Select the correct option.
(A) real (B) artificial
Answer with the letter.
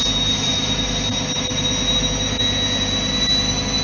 A